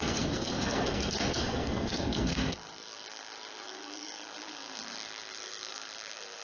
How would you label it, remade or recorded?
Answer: remade